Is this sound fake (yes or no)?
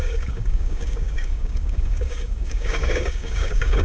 yes